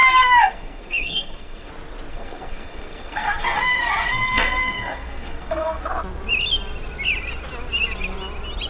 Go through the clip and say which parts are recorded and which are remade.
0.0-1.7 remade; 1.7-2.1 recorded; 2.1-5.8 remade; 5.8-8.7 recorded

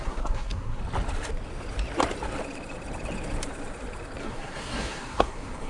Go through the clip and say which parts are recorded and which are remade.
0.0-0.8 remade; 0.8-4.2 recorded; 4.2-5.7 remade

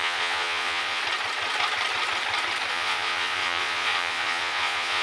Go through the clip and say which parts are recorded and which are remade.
0.0-1.0 remade; 1.0-2.7 recorded; 2.7-5.0 remade

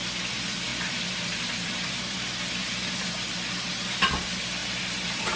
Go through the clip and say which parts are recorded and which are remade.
0.0-0.7 recorded; 0.7-2.2 remade; 2.2-2.6 recorded; 2.6-3.1 remade; 3.1-4.6 recorded; 4.6-5.4 remade

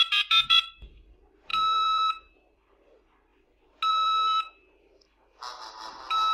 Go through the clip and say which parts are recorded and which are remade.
0.0-3.3 remade; 3.3-3.9 recorded; 3.9-6.3 remade